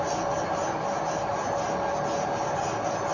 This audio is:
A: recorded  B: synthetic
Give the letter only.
A